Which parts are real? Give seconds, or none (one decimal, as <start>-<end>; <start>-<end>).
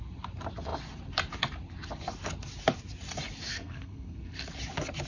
0.0-3.5; 4.5-5.1